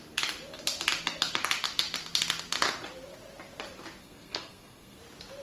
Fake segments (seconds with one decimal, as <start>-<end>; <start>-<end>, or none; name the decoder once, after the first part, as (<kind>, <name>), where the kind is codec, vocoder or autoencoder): 4.0-5.0 (codec, SNAC)